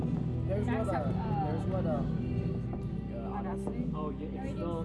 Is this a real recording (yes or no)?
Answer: yes